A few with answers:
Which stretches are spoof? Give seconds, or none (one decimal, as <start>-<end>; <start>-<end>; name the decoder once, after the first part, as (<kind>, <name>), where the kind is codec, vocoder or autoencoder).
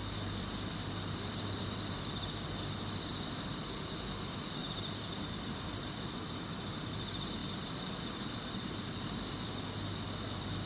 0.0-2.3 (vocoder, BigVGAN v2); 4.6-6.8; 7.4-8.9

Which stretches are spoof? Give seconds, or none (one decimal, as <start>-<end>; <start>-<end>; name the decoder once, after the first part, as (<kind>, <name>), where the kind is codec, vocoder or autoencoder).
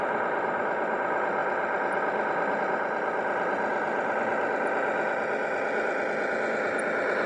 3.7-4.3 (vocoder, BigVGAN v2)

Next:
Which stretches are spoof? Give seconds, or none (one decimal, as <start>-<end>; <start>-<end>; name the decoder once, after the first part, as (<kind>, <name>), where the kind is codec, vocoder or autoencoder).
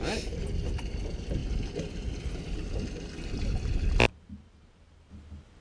4.1-5.1 (vocoder, BigVGAN v2)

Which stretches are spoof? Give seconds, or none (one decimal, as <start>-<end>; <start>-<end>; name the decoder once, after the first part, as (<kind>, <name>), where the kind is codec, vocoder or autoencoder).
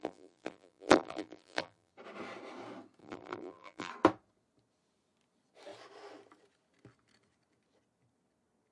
0.0-1.9 (vocoder, BigVGAN v2); 3.0-3.9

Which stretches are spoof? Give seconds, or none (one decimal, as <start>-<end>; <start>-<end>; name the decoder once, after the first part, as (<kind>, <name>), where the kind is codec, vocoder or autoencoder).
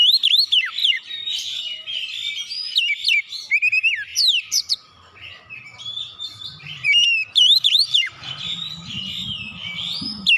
0.8-1.6 (vocoder, BigVGAN v2); 4.1-4.7; 5.7-8.3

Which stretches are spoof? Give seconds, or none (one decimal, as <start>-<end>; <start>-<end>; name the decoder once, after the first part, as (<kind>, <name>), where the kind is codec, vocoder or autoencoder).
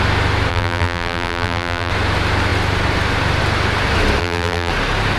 0.5-1.9 (vocoder, BigVGAN v2); 4.2-4.7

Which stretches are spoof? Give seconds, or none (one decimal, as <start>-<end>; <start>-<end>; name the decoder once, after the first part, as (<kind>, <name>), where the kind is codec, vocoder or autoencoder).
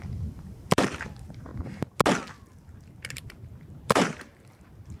0.0-1.5 (vocoder, BigVGAN v2); 3.1-5.0